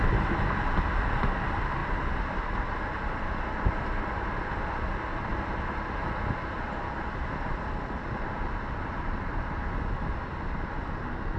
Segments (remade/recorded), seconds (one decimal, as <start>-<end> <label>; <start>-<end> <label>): 0.0-11.4 recorded

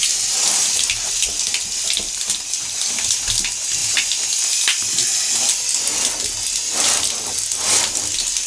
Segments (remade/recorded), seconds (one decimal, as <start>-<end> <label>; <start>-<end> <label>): 0.0-8.5 recorded

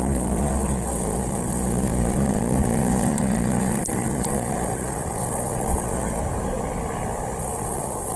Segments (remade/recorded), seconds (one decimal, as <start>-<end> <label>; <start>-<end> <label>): 0.0-6.2 remade; 6.2-7.4 recorded; 7.4-8.2 remade

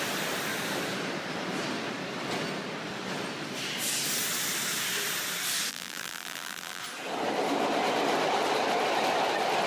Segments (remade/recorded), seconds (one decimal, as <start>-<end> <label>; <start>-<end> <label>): 0.0-5.7 recorded; 5.7-6.8 remade; 6.8-9.7 recorded

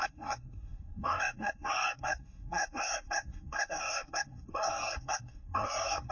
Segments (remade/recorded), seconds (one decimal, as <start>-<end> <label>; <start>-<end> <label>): 0.0-6.1 remade